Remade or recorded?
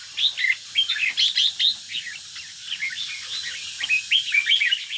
recorded